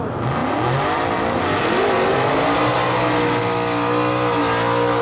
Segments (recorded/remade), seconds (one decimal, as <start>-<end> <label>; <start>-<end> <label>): 0.0-5.0 recorded